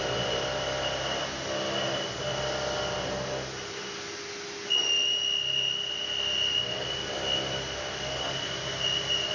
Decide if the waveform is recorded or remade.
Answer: recorded